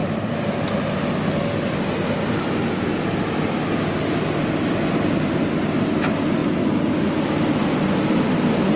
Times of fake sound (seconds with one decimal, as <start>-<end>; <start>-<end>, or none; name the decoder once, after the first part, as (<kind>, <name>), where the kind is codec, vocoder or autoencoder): none